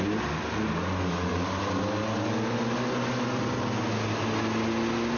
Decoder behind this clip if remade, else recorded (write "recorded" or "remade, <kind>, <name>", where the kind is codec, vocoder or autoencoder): recorded